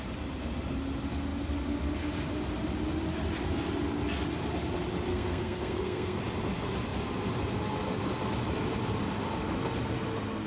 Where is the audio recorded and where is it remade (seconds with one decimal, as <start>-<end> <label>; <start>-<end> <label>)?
0.0-5.1 recorded; 5.1-6.2 remade; 6.2-10.5 recorded